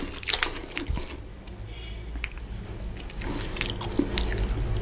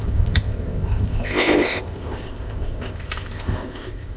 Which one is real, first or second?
first